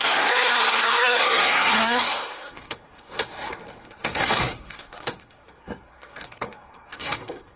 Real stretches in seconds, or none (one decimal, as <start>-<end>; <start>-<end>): none